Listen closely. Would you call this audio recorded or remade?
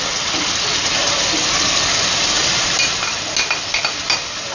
recorded